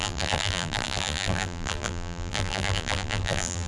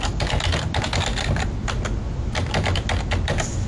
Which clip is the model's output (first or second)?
first